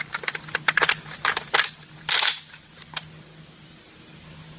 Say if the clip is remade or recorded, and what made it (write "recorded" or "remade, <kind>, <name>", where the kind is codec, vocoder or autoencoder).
recorded